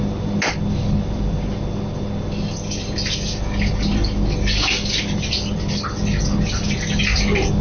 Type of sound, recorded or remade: recorded